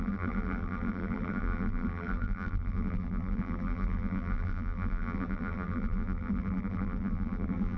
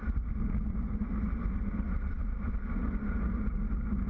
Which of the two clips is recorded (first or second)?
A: second